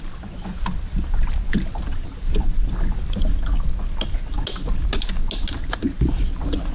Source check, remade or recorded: recorded